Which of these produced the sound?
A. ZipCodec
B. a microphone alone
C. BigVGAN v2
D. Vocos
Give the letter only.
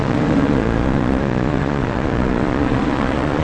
D